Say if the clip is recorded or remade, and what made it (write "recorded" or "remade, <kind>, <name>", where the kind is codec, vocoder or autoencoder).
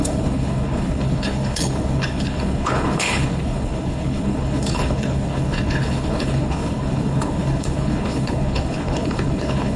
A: remade, codec, HILCodec